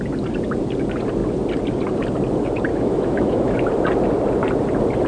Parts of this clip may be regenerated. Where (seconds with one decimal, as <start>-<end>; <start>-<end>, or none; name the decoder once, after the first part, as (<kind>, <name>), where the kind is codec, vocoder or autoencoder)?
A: 2.7-3.7 (autoencoder, DAC-VAE)